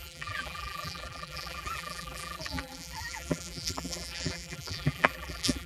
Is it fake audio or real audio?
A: fake